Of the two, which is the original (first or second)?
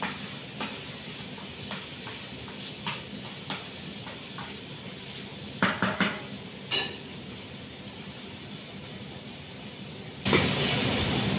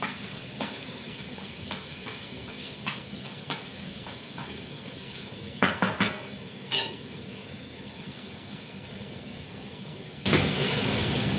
first